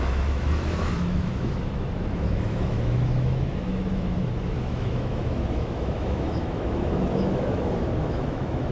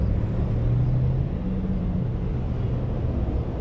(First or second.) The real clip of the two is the second